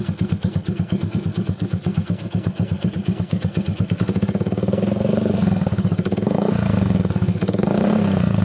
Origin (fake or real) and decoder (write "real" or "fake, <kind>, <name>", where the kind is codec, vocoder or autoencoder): fake, codec, SNAC